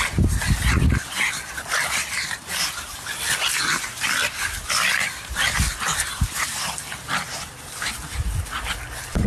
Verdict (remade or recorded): recorded